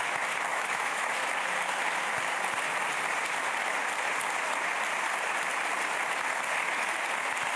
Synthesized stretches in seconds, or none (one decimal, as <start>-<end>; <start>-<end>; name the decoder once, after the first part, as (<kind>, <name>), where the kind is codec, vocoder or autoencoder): 0.5-1.1 (autoencoder, DAC-VAE)